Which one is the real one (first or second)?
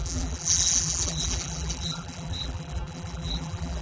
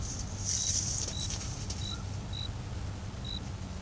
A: second